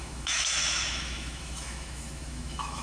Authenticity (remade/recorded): remade